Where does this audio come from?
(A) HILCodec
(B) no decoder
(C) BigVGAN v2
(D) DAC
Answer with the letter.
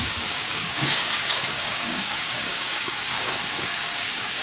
D